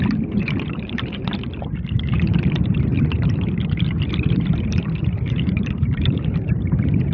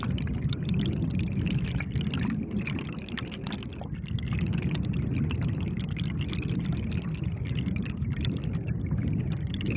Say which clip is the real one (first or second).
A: second